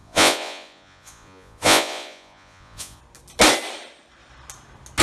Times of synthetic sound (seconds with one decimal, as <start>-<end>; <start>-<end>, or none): 0.0-3.0